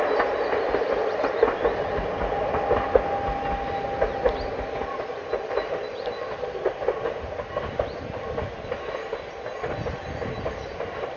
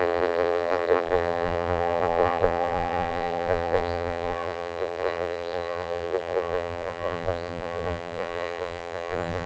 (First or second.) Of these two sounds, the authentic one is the first